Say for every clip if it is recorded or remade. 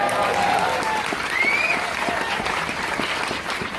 recorded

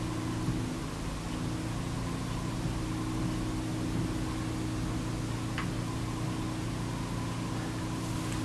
recorded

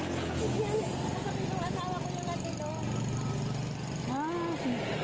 recorded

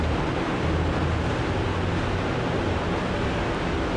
recorded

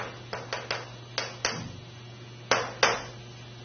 recorded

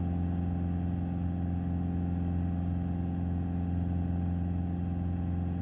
recorded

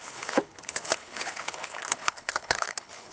remade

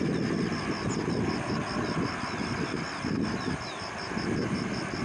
recorded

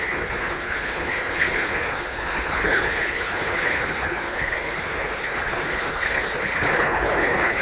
remade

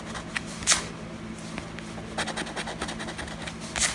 recorded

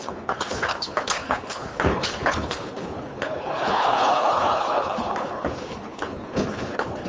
remade